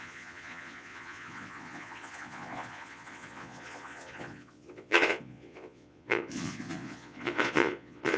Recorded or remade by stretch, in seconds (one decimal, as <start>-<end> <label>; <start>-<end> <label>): 0.0-8.2 remade